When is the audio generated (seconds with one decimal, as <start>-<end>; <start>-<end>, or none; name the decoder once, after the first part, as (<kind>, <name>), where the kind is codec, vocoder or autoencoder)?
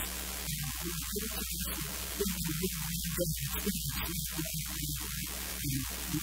none